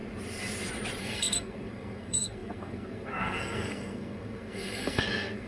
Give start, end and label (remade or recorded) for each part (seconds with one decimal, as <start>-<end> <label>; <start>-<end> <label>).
0.0-1.0 recorded; 1.0-5.5 remade